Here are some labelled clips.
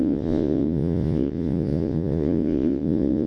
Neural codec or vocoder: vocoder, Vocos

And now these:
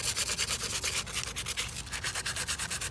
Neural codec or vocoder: none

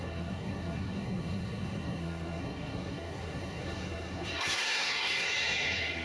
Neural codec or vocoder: codec, SNAC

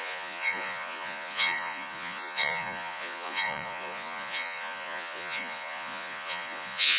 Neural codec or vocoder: vocoder, Vocos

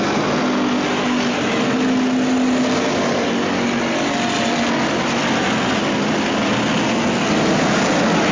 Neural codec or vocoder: none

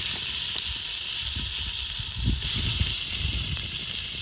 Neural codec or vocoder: none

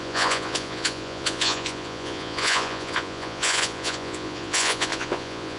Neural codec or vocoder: vocoder, Vocos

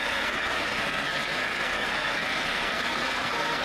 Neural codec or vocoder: codec, SNAC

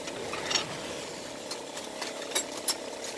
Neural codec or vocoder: none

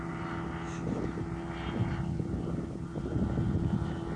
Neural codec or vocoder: none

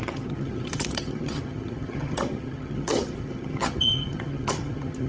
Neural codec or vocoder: vocoder, HiFi-GAN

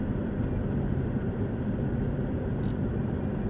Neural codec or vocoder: none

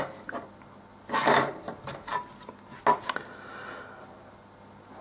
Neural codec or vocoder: none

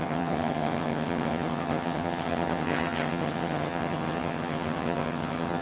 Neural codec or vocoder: vocoder, HiFi-GAN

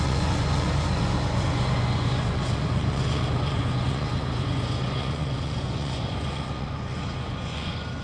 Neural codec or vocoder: vocoder, Vocos